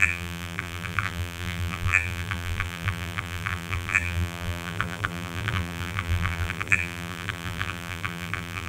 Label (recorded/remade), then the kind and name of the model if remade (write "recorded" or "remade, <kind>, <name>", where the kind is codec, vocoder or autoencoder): remade, vocoder, BigVGAN v2